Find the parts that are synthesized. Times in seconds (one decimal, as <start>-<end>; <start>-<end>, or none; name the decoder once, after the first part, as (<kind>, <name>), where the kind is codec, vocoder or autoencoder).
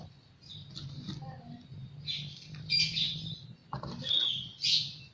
none